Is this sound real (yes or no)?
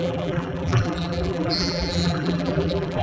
no